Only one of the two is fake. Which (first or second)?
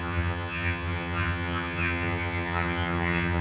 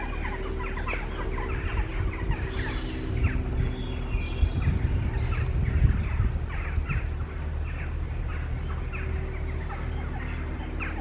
first